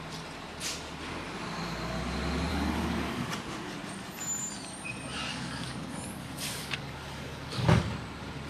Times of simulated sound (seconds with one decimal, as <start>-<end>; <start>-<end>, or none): 2.5-3.3; 5.3-7.8